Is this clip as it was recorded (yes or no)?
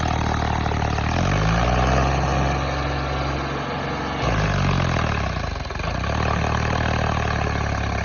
yes